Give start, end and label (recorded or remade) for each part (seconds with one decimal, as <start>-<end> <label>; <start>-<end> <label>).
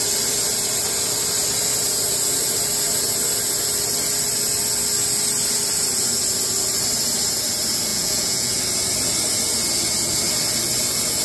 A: 0.0-7.9 recorded; 7.9-8.5 remade; 8.5-11.2 recorded